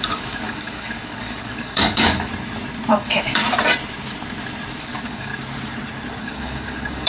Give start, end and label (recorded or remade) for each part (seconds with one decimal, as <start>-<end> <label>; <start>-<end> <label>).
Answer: 0.0-2.3 remade; 2.3-2.9 recorded; 2.9-3.4 remade; 3.4-4.8 recorded; 4.8-5.3 remade; 5.3-6.2 recorded; 6.2-7.1 remade